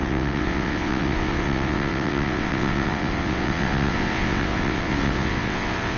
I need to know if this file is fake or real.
fake